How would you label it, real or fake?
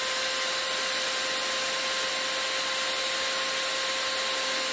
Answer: real